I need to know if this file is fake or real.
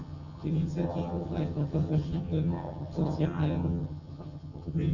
fake